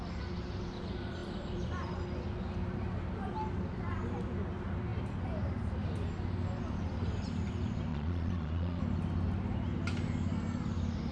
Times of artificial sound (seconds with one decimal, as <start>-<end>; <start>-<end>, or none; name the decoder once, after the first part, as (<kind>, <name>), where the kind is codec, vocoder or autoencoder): 7.9-8.8 (vocoder, Vocos)

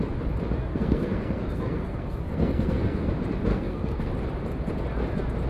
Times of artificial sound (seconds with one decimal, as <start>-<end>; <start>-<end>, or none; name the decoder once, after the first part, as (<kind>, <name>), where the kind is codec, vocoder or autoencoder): 0.7-3.1 (codec, SNAC); 3.5-4.1

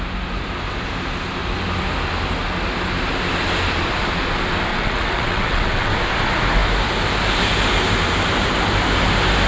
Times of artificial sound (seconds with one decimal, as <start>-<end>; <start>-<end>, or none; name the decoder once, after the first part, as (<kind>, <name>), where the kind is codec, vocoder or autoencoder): 4.7-5.9 (vocoder, WaveNeXt)

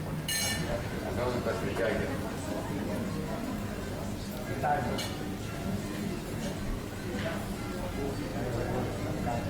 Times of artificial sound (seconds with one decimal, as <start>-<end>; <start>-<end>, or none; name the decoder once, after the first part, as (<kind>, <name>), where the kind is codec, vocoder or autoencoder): none